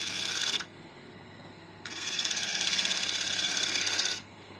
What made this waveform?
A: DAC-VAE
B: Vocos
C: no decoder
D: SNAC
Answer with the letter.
D